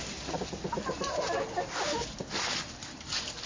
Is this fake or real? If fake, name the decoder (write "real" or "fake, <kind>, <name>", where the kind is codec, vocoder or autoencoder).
real